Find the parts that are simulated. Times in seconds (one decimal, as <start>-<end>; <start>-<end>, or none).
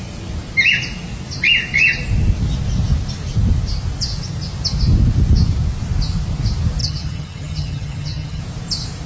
6.8-8.4